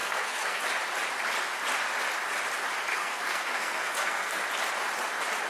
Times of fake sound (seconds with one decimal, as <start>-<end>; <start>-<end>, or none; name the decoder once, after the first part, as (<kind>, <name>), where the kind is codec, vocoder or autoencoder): 0.0-0.6 (codec, SNAC); 2.9-4.4